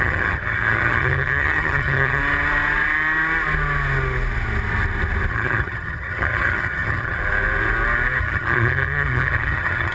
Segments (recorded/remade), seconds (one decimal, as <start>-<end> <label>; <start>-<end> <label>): 0.0-2.2 remade; 2.2-5.3 recorded; 5.3-7.2 remade; 7.2-8.2 recorded; 8.2-9.9 remade

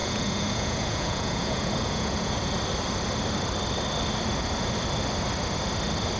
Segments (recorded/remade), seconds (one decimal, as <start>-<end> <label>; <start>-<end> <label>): 0.0-2.3 remade; 2.3-6.2 recorded

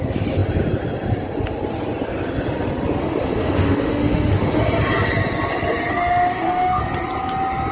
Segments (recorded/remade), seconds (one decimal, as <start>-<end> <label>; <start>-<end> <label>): 0.0-3.0 recorded; 3.0-4.6 remade; 4.6-5.9 recorded; 5.9-6.8 remade; 6.8-7.7 recorded

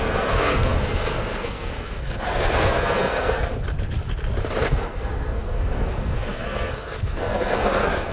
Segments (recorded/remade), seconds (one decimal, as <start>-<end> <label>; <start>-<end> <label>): 0.0-3.5 remade; 3.5-4.6 recorded; 4.6-8.1 remade

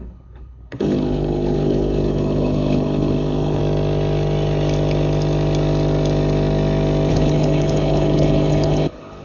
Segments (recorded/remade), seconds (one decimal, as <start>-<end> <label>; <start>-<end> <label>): 0.0-3.6 remade; 3.6-7.1 recorded; 7.1-9.2 remade